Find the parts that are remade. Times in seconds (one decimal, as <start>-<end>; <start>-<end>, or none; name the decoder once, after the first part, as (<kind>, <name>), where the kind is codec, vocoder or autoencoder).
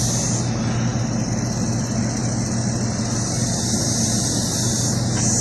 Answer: none